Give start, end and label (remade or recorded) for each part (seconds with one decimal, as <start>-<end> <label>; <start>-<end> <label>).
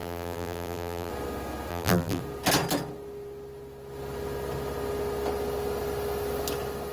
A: 0.0-1.1 remade; 1.1-1.7 recorded; 1.7-2.2 remade; 2.2-6.9 recorded